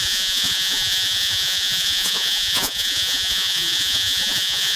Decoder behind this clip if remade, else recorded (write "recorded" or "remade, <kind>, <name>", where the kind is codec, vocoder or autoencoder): remade, vocoder, Vocos